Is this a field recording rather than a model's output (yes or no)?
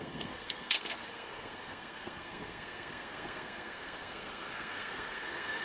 no